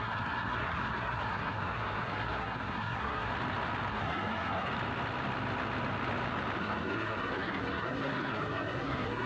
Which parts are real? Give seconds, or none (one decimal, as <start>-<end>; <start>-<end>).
3.3-3.9; 4.7-6.6